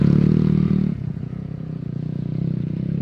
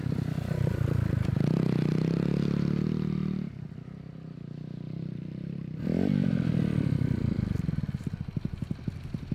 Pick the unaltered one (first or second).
second